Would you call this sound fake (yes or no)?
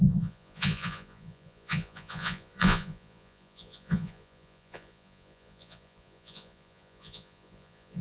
yes